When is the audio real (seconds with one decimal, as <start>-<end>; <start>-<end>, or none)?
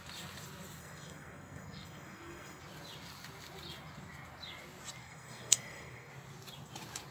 0.0-0.8; 2.6-5.0; 6.1-7.1